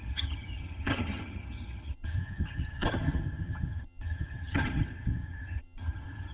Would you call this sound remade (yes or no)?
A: yes